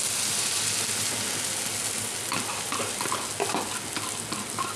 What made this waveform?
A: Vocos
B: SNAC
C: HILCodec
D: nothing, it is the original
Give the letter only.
D